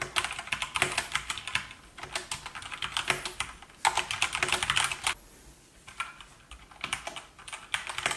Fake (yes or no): no